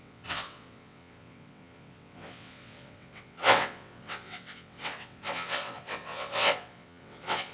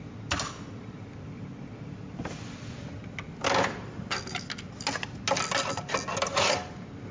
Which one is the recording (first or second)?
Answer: second